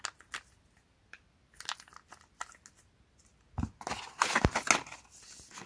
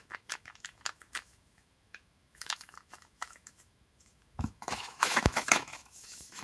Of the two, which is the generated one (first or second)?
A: second